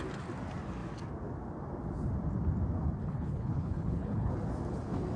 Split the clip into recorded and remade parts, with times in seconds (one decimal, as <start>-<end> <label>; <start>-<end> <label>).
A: 0.0-3.0 recorded; 3.0-4.3 remade; 4.3-5.2 recorded